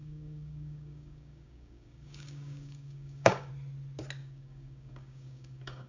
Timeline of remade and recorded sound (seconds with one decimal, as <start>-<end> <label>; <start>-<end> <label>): 0.0-3.5 remade; 3.5-4.2 recorded; 4.2-5.9 remade